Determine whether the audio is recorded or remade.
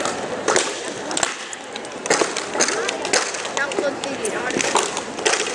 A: recorded